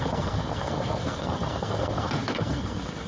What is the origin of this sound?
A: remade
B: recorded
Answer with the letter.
A